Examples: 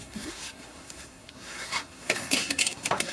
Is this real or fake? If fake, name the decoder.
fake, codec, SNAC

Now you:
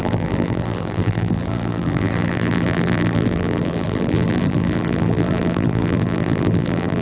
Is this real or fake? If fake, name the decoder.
fake, vocoder, BigVGAN v2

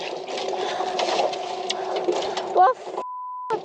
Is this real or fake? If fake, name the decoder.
real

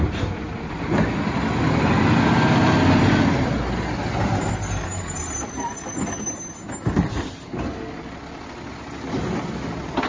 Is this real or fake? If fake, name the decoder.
real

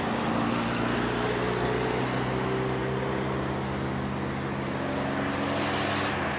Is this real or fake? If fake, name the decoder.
real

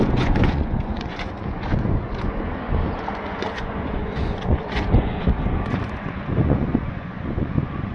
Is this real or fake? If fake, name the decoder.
fake, vocoder, Vocos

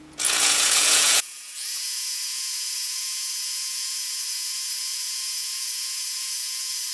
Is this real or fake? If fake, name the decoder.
fake, vocoder, Vocos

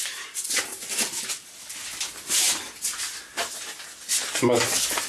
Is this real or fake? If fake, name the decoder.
real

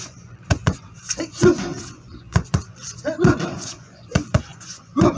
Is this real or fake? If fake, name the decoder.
fake, vocoder, Vocos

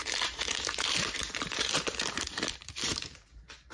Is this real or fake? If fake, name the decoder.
fake, vocoder, BigVGAN v2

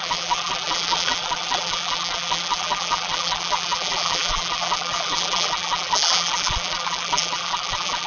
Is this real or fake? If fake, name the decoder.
fake, vocoder, BigVGAN v2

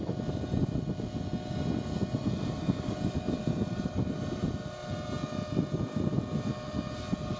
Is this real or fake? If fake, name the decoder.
real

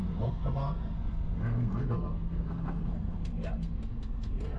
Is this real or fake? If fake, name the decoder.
fake, codec, SNAC